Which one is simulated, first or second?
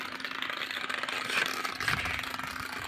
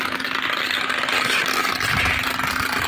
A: first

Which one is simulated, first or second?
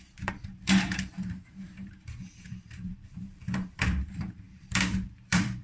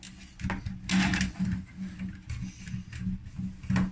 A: first